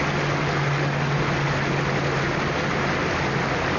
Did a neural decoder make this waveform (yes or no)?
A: no